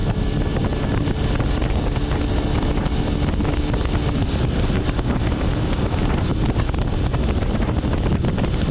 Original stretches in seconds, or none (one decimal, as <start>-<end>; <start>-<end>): 0.0-8.7